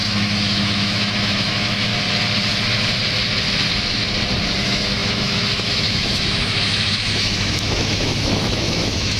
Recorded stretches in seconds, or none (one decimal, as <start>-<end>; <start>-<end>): 1.9-4.6